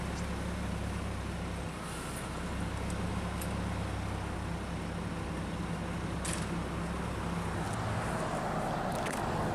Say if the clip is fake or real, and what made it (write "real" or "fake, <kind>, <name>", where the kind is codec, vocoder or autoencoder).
real